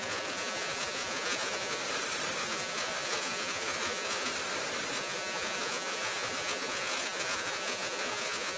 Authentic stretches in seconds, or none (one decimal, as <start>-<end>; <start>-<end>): 1.8-2.4; 4.3-4.9